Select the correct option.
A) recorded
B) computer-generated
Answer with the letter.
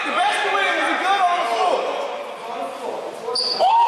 A